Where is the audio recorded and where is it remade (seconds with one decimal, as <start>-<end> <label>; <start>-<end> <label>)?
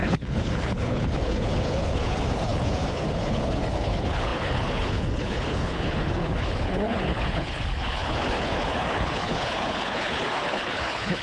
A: 0.0-11.2 remade